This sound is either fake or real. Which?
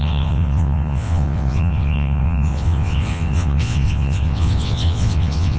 fake